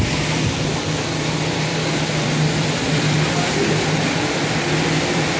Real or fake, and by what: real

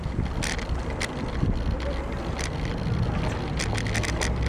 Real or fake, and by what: real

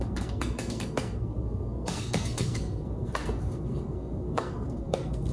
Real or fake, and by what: fake, codec, SNAC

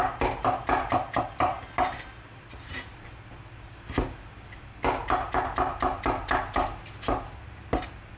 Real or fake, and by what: real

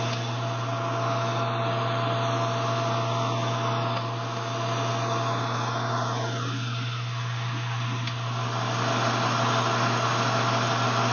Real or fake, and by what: real